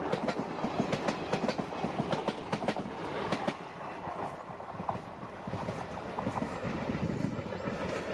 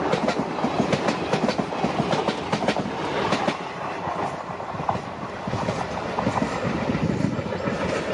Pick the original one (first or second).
first